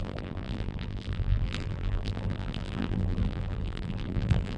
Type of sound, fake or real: fake